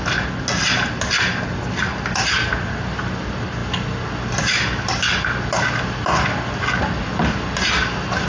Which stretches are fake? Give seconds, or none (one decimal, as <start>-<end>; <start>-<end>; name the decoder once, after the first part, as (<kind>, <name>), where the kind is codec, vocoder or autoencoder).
none